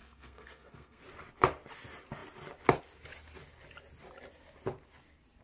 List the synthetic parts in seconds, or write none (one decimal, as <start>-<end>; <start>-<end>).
0.0-1.0